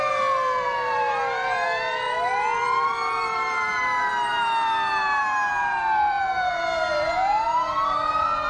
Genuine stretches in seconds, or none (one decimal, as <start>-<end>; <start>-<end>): none